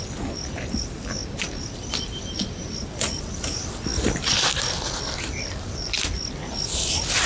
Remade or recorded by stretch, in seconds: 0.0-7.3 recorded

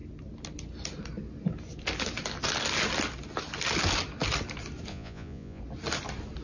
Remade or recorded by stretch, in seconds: 0.0-4.9 recorded; 4.9-5.6 remade; 5.6-6.4 recorded

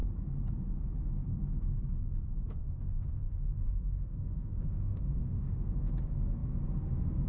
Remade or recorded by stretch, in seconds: 0.0-2.6 recorded; 2.6-5.9 remade; 5.9-7.3 recorded

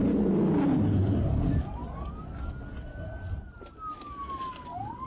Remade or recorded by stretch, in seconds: 0.0-5.1 recorded